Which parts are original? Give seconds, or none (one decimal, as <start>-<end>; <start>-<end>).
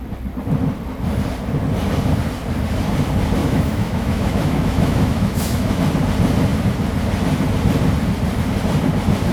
0.0-3.4; 5.8-9.3